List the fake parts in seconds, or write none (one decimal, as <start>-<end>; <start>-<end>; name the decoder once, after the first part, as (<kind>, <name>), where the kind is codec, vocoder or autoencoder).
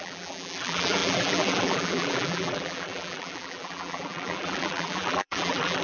0.0-5.8 (vocoder, BigVGAN v2)